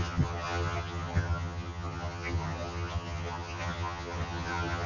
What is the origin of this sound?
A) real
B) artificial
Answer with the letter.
B